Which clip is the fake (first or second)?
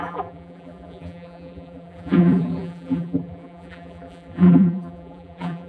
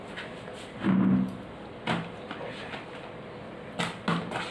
first